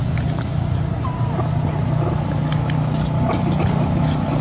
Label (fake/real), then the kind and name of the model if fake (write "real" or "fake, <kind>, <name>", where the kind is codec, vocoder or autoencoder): real